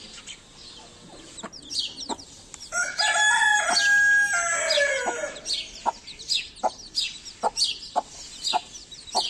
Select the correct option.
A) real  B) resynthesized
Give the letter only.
A